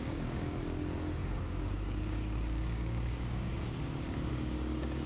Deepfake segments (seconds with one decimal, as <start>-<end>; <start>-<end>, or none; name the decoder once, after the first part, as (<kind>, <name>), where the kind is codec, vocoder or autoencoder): 0.0-5.1 (codec, DAC)